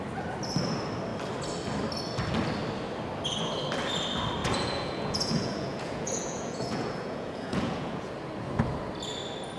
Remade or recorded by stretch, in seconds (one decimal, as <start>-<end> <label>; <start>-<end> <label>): 0.0-4.4 recorded; 4.4-8.1 remade; 8.1-9.6 recorded